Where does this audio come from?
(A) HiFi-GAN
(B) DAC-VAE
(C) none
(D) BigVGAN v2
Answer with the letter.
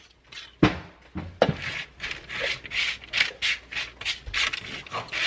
C